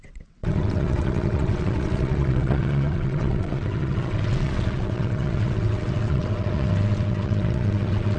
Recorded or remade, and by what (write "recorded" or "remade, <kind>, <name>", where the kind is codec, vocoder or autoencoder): remade, vocoder, WaveNeXt